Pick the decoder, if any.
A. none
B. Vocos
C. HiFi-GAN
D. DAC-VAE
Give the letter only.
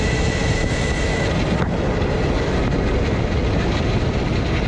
A